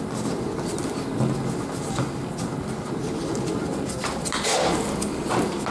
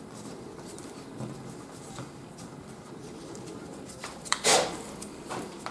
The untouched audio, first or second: first